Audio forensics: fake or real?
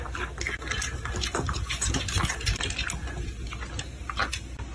real